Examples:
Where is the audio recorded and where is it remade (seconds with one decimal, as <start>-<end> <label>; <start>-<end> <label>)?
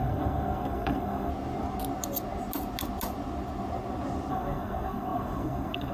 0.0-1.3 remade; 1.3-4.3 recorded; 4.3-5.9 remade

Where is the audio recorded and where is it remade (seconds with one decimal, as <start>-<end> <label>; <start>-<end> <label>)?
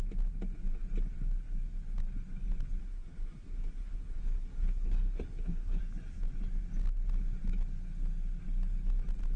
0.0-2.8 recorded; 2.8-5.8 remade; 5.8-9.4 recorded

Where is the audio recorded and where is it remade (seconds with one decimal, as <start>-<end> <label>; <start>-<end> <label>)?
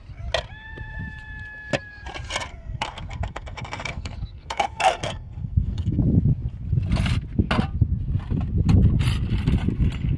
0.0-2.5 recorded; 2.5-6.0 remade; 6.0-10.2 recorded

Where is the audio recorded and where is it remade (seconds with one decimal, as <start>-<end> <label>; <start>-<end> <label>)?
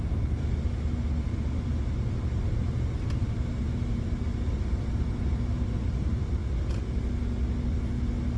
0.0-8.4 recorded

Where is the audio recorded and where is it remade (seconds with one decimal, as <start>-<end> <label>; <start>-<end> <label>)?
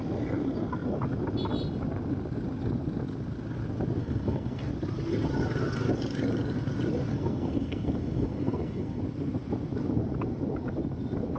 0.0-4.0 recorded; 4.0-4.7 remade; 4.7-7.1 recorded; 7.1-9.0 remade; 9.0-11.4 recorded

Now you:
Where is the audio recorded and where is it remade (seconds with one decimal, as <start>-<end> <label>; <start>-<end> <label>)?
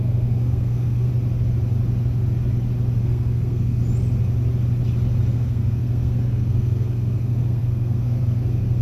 0.0-1.1 remade; 1.1-3.0 recorded; 3.0-3.8 remade; 3.8-5.3 recorded; 5.3-8.8 remade